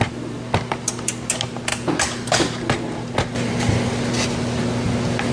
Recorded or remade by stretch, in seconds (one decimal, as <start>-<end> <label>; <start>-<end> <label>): 0.0-5.3 recorded